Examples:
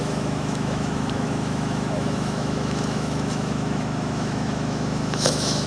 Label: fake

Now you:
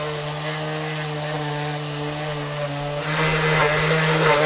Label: real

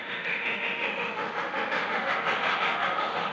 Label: fake